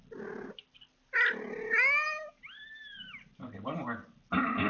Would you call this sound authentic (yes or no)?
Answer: yes